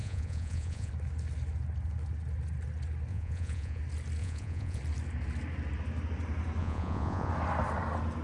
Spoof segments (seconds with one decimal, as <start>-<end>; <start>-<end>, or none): 0.0-0.9; 3.1-3.8; 4.2-4.8; 6.6-7.3